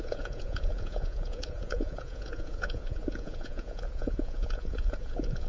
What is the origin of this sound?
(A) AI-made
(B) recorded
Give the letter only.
A